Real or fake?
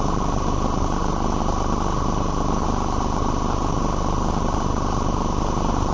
real